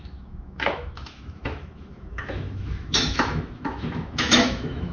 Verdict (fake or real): fake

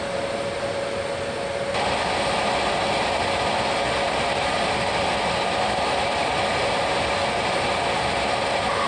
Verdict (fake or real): real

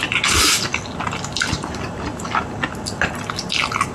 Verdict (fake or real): real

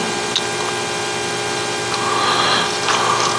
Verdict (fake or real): real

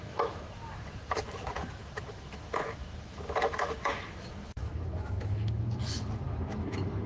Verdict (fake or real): fake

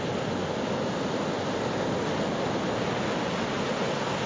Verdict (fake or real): real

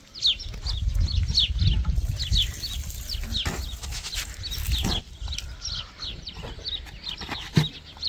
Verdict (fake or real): real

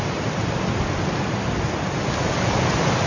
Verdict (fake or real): real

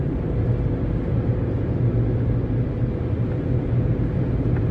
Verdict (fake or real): real